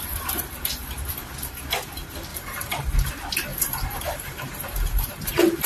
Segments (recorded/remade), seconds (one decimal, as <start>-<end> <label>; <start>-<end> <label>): 0.0-2.3 recorded; 2.3-3.1 remade; 3.1-3.5 recorded; 3.5-5.2 remade; 5.2-5.7 recorded